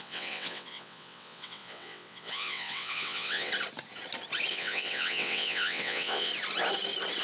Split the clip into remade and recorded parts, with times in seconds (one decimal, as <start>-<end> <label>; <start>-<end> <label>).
0.0-3.5 remade; 3.5-4.5 recorded; 4.5-6.3 remade; 6.3-7.2 recorded